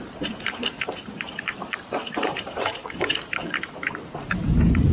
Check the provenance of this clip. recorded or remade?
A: remade